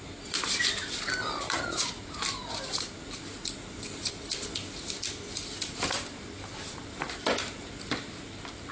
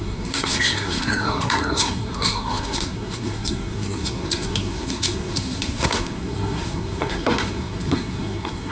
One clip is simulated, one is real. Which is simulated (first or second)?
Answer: second